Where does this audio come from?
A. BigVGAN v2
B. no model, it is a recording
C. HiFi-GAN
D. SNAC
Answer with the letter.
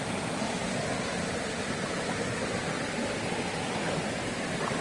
B